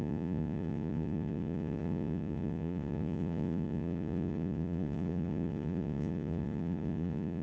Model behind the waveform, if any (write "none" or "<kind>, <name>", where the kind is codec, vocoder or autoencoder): vocoder, Vocos